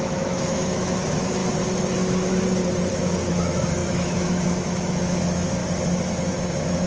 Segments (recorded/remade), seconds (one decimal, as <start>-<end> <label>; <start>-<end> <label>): 0.0-1.4 remade; 1.4-2.9 recorded; 2.9-5.6 remade; 5.6-6.2 recorded; 6.2-6.9 remade